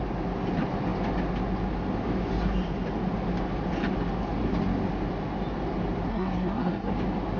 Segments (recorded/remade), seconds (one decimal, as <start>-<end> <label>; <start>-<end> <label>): 0.0-6.1 recorded; 6.1-6.9 remade; 6.9-7.4 recorded